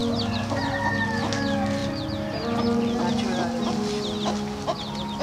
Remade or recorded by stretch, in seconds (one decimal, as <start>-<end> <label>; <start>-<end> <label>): 0.0-5.2 recorded